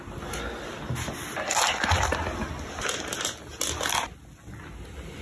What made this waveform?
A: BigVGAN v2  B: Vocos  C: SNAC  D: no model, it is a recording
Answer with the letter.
D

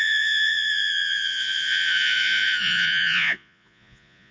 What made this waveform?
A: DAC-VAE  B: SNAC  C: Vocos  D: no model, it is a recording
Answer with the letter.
C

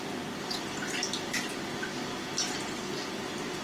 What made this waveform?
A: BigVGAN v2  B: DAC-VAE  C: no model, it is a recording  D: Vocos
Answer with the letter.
C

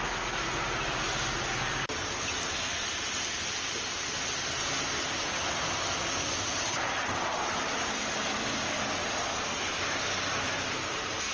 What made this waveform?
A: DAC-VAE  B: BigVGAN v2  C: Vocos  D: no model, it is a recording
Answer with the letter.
D